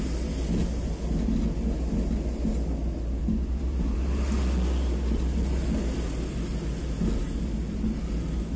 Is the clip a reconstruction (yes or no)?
no